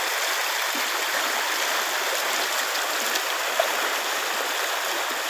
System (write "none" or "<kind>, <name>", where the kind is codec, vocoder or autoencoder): none